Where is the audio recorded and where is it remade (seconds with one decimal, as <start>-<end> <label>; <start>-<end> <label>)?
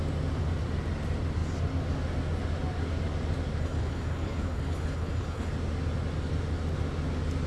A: 0.0-3.6 recorded; 3.6-5.5 remade; 5.5-7.5 recorded